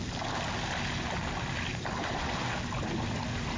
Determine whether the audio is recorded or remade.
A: recorded